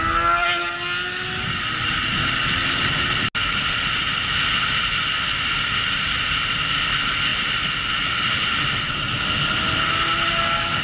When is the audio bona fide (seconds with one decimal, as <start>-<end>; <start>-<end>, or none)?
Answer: 0.0-10.8